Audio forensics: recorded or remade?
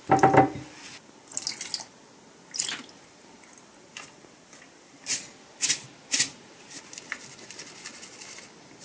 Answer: recorded